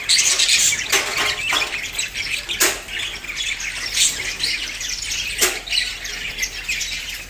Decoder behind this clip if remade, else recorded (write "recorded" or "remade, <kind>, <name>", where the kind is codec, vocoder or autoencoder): recorded